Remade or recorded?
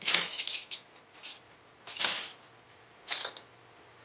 recorded